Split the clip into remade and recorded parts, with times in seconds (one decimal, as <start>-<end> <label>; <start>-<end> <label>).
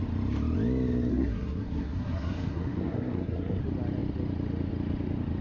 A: 0.0-1.1 recorded; 1.1-3.6 remade; 3.6-5.4 recorded